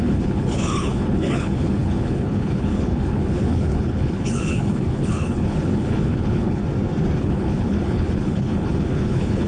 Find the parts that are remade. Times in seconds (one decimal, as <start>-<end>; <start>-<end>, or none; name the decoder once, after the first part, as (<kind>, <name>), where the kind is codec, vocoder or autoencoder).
0.0-6.6 (codec, HILCodec); 7.2-9.5